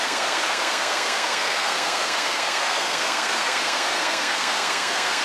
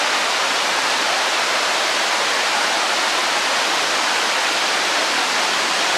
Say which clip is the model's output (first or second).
first